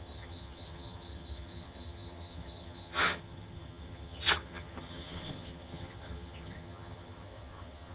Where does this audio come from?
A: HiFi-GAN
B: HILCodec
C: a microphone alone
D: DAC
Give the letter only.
A